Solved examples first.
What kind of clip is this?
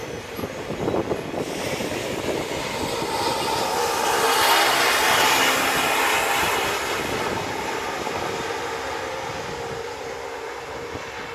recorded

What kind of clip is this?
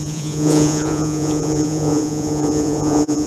remade